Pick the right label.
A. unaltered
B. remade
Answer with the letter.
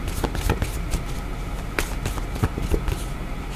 A